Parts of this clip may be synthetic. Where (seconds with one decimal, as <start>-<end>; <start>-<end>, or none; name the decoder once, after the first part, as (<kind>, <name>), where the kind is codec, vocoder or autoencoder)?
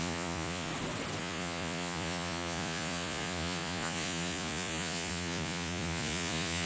0.0-0.7 (vocoder, Vocos); 1.2-6.7